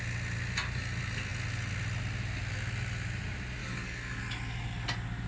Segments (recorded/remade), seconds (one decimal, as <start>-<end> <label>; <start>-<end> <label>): 0.0-3.6 recorded; 3.6-4.2 remade; 4.2-5.3 recorded